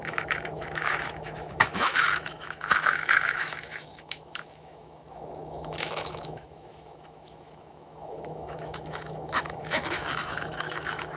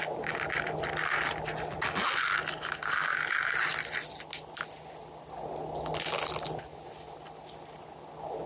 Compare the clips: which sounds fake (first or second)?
first